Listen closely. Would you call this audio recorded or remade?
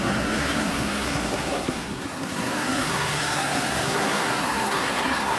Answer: remade